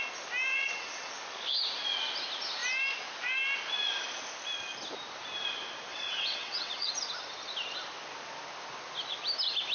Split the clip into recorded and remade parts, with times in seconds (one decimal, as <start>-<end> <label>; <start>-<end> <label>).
0.0-0.5 recorded; 0.5-1.1 remade; 1.1-5.9 recorded; 5.9-6.9 remade; 6.9-9.7 recorded